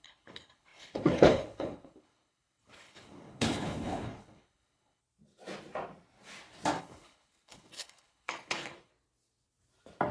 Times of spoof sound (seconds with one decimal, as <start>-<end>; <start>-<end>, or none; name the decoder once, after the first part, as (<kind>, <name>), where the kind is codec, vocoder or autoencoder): 0.0-5.0 (codec, HILCodec); 6.8-8.9